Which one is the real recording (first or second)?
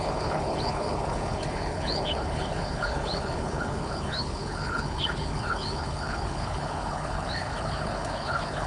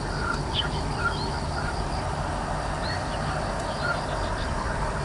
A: second